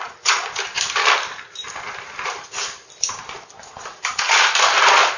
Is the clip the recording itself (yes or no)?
yes